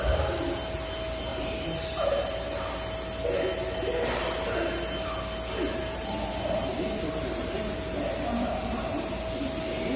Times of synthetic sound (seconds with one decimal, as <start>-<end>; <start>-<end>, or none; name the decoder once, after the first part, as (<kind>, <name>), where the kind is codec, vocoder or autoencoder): 1.3-1.9 (vocoder, BigVGAN v2); 5.6-9.2